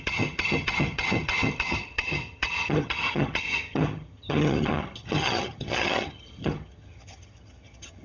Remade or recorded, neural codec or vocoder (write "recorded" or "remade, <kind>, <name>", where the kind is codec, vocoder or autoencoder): remade, vocoder, HiFi-GAN